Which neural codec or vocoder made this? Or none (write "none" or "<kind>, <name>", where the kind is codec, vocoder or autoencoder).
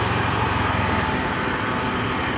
none